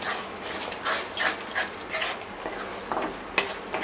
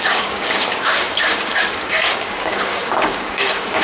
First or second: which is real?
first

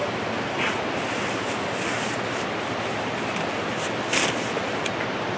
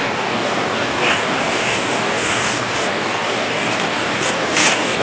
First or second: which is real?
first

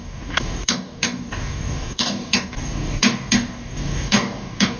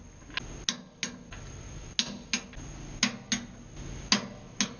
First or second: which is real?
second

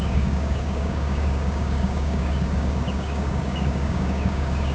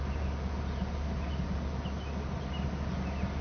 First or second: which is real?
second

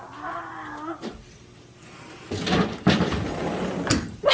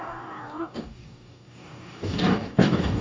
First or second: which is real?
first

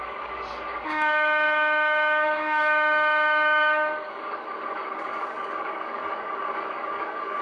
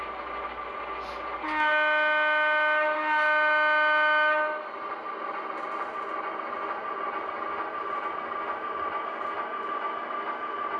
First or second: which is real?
second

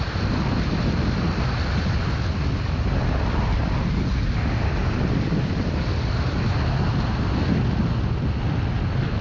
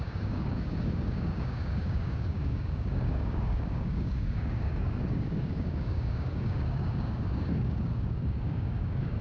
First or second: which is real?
first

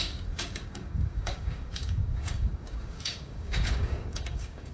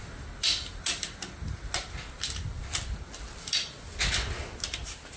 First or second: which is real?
second